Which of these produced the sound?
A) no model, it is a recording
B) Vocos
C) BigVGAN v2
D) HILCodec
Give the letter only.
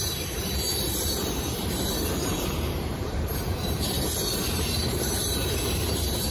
C